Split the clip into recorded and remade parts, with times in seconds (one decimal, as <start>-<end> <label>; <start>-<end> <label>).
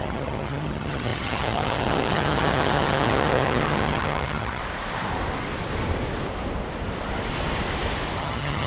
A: 0.0-4.6 remade; 4.6-8.2 recorded; 8.2-8.7 remade